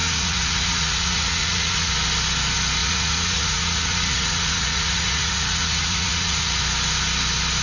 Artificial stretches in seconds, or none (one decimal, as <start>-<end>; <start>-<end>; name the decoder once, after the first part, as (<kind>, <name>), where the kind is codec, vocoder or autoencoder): 0.0-1.9 (vocoder, Vocos); 2.8-6.6